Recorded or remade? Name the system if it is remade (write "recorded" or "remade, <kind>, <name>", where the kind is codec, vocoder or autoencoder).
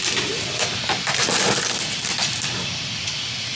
recorded